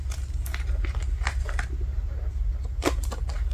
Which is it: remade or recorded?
recorded